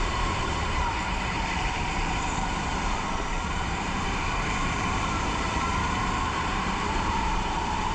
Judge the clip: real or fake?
fake